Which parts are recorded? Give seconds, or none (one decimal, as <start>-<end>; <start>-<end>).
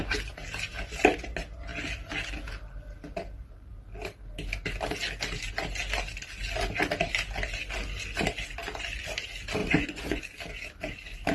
0.0-9.6; 10.2-11.3